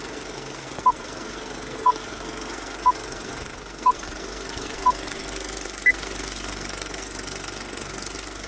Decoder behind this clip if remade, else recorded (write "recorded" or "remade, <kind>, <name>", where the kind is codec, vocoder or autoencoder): remade, codec, SNAC